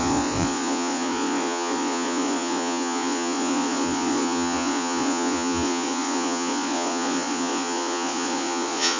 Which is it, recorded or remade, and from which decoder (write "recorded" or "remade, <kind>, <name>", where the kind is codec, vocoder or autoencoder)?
remade, vocoder, Vocos